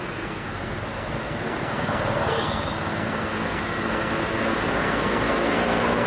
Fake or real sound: fake